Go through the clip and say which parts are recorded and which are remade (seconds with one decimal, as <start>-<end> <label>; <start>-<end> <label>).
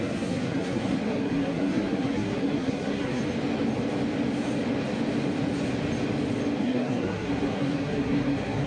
0.0-3.2 remade; 3.2-6.6 recorded; 6.6-8.7 remade